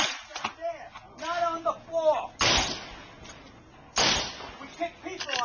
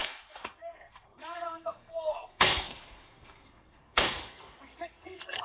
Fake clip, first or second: second